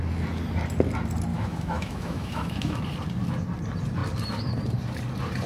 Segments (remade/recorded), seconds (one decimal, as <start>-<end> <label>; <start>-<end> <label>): 0.0-1.3 recorded; 1.3-2.8 remade; 2.8-5.5 recorded